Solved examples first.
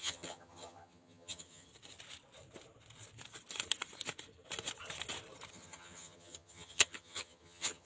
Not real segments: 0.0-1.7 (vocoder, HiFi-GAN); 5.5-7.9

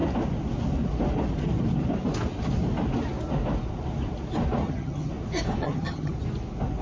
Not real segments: 4.6-5.1 (vocoder, HiFi-GAN); 5.6-6.1